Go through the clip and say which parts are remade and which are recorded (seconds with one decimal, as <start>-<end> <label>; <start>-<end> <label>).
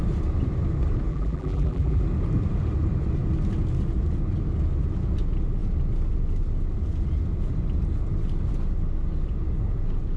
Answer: 0.0-1.1 recorded; 1.1-2.0 remade; 2.0-10.2 recorded